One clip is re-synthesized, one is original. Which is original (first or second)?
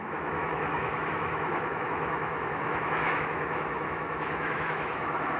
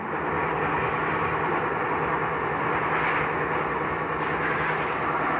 second